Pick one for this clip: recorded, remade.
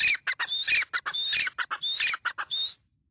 recorded